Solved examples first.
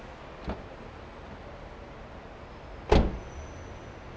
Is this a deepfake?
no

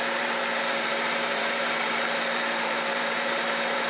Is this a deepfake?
yes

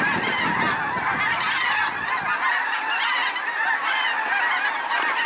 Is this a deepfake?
no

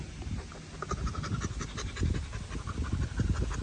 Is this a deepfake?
no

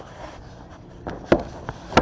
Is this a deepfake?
no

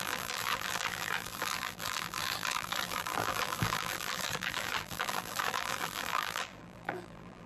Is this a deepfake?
yes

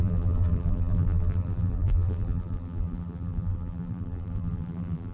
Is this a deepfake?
yes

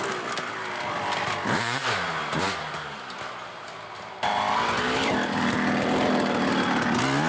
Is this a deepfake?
no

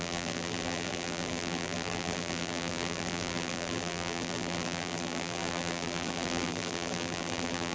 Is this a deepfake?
yes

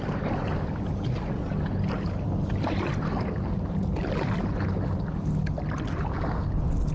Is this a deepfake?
no